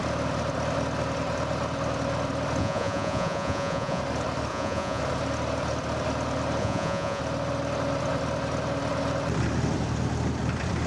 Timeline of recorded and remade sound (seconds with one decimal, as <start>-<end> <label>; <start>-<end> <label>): 0.0-2.6 recorded; 2.6-4.0 remade; 4.0-4.5 recorded; 4.5-5.0 remade; 5.0-6.6 recorded; 6.6-7.2 remade; 7.2-10.9 recorded